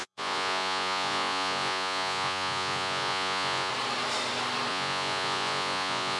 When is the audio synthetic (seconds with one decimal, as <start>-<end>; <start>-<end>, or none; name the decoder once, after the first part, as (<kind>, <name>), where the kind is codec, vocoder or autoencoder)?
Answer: 0.0-3.7 (vocoder, Vocos); 4.7-6.2